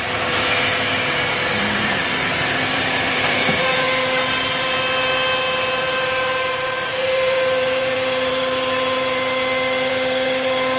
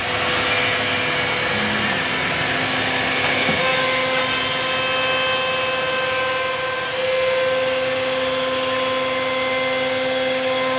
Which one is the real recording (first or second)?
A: second